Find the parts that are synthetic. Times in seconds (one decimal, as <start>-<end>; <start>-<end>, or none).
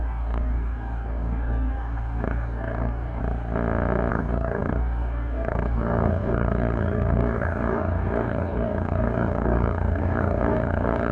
0.0-3.2; 4.1-11.1